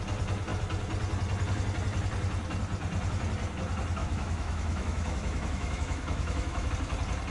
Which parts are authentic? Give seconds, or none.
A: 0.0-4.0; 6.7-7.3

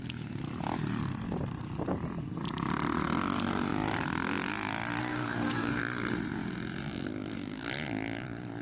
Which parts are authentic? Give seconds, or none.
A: 0.0-5.0; 5.8-8.6